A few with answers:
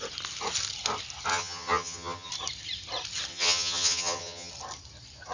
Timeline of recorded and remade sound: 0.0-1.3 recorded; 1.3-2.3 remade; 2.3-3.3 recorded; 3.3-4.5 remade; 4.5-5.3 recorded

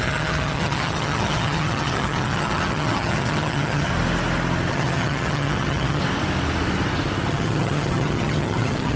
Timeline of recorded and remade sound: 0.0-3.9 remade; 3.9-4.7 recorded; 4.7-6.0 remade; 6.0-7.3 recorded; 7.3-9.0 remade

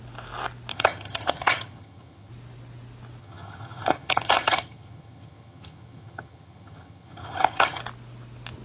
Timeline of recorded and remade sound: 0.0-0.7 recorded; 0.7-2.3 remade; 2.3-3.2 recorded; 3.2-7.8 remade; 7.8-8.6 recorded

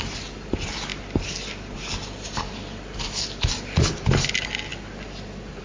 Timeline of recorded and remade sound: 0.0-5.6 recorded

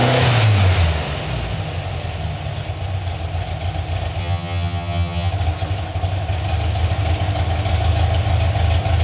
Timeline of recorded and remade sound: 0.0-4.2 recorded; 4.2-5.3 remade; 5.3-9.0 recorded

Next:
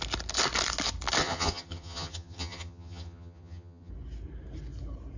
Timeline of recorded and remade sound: 0.0-1.2 recorded; 1.2-3.9 remade; 3.9-5.2 recorded